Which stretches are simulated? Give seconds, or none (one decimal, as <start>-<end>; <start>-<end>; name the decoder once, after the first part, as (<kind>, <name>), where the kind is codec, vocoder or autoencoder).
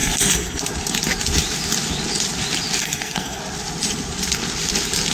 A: 0.0-0.6 (codec, SNAC); 2.8-3.4